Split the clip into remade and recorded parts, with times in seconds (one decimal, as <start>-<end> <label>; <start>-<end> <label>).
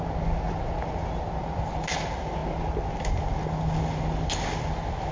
0.0-5.1 recorded